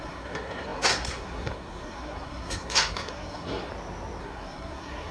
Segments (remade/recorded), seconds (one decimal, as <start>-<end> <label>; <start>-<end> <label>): 0.0-3.7 remade; 3.7-4.2 recorded; 4.2-5.1 remade